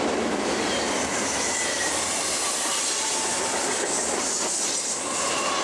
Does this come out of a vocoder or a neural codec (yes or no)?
no